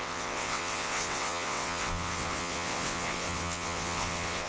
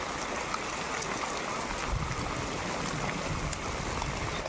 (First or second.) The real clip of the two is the second